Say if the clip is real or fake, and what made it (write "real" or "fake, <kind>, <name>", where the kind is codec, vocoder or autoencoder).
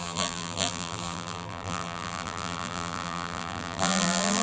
fake, vocoder, BigVGAN v2